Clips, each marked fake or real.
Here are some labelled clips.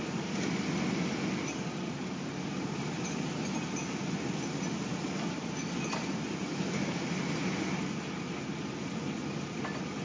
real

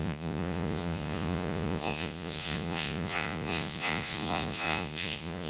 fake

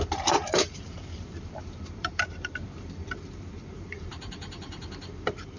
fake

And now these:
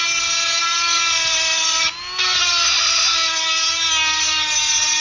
real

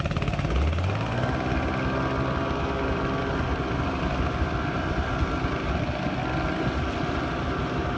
real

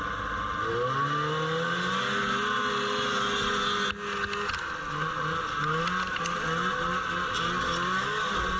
real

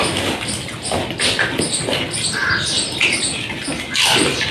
real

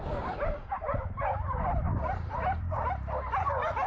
fake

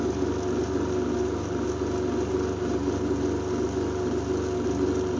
real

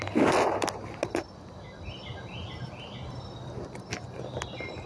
real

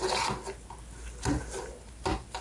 real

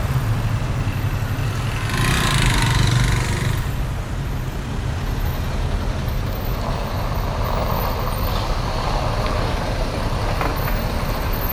real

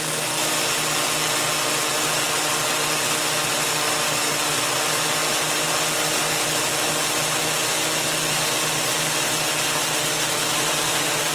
real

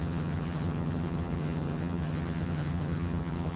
fake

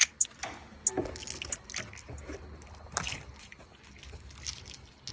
real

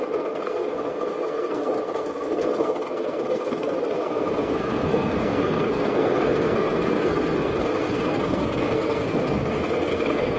fake